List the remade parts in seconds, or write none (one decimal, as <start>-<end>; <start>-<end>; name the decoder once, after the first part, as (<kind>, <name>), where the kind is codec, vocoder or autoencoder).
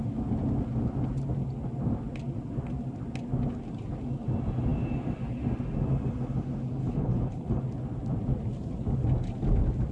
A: 6.8-7.6 (codec, HILCodec)